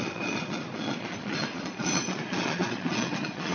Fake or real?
fake